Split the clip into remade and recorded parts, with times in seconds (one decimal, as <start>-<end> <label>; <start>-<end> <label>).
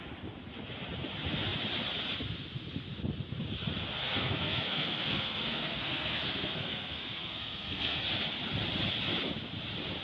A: 0.0-4.0 recorded; 4.0-8.0 remade; 8.0-10.0 recorded